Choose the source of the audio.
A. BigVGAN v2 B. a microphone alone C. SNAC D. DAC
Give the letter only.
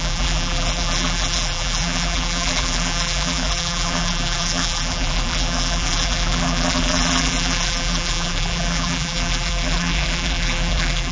A